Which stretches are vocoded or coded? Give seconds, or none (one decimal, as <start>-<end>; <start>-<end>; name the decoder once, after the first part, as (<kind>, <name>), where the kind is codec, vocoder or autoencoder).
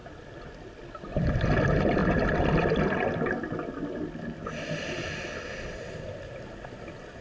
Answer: none